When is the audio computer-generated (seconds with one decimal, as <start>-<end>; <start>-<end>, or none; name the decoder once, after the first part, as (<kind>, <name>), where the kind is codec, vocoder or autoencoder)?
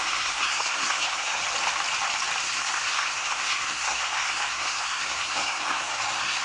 0.0-1.4 (codec, SNAC); 2.4-6.4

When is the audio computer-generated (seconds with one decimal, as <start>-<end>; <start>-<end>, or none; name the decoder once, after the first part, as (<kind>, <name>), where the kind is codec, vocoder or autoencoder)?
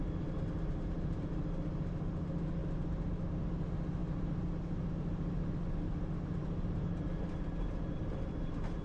none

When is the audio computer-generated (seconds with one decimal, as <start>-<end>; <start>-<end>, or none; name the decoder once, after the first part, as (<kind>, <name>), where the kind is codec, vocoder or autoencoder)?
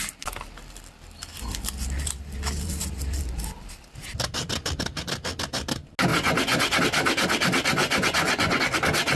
6.1-6.8 (vocoder, Vocos); 7.8-8.6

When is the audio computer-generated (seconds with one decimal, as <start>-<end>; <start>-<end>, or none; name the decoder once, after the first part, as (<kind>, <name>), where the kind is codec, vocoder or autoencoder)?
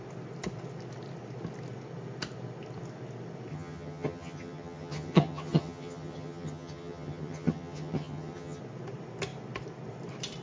3.5-8.6 (vocoder, HiFi-GAN)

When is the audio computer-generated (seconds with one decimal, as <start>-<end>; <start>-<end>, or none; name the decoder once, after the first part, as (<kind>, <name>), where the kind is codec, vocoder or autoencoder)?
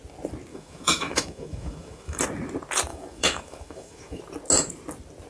0.5-2.2 (autoencoder, DAC-VAE); 2.9-4.2